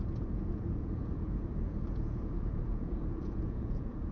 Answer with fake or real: fake